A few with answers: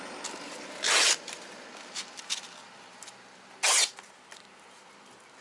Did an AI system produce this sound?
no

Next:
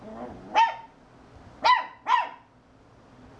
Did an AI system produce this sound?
no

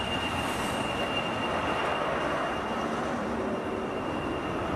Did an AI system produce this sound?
no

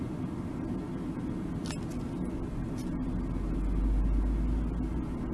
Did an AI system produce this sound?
no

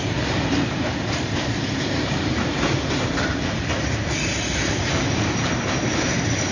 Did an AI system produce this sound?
yes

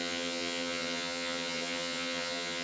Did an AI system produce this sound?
yes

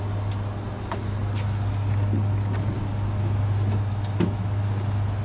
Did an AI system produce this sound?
no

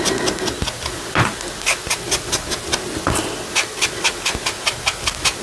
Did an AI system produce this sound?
no